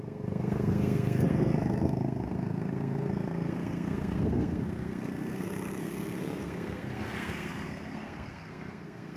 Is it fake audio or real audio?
fake